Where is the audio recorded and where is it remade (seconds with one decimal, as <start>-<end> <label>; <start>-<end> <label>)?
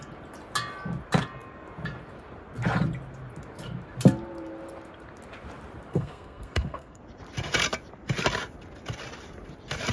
0.0-5.9 recorded; 5.9-7.0 remade; 7.0-9.9 recorded